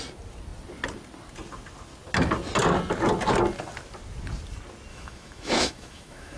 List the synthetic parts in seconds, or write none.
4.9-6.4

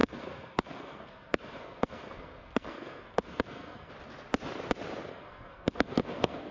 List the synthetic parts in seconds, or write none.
0.0-3.9; 5.1-6.5

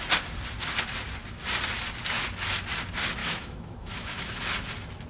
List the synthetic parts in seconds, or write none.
3.2-4.4

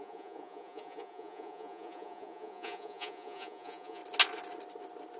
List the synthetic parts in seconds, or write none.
0.0-4.0

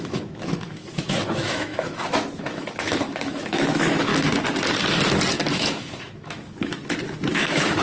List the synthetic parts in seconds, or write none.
0.0-4.1; 5.5-6.8; 7.3-7.8

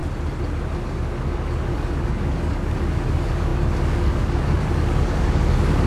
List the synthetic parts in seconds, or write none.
0.9-5.9

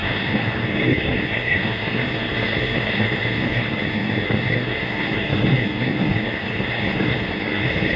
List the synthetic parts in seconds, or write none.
0.0-8.0